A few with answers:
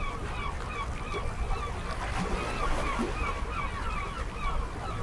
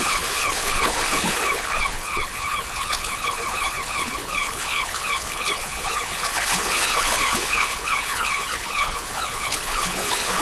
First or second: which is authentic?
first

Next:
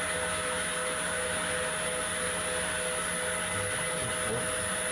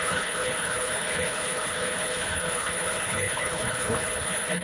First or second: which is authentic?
first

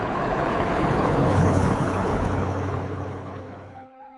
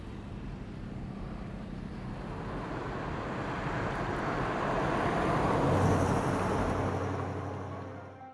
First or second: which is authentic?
second